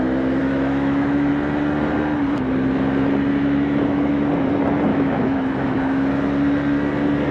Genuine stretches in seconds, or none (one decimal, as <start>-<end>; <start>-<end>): 0.0-0.4; 1.3-3.3; 4.3-4.9; 6.1-7.3